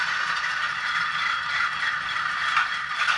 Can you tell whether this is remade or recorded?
recorded